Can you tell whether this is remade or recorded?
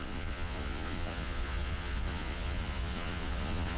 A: remade